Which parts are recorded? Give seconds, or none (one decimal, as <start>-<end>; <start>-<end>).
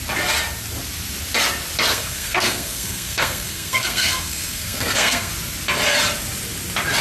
0.0-1.9; 5.3-7.0